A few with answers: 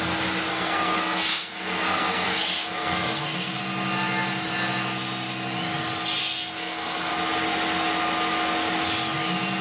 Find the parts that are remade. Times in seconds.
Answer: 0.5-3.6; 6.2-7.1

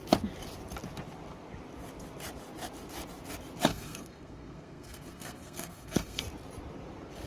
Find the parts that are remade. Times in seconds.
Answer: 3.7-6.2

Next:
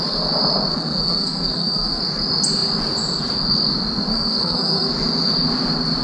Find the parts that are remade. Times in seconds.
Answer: 0.7-2.0; 4.1-4.9

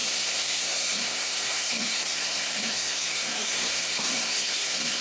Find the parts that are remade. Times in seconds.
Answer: 0.0-5.0

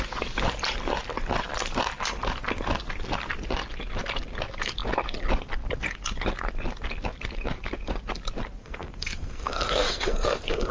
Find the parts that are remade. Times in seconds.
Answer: 8.6-10.7

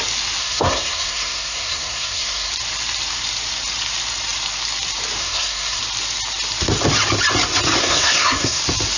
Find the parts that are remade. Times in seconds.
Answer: 0.4-2.5; 5.2-5.8; 7.8-8.6

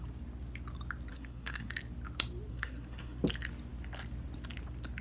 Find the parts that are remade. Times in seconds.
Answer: 1.1-1.7; 2.5-3.2

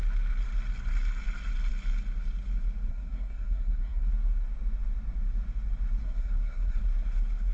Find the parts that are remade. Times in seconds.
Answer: 2.9-4.1; 6.0-6.8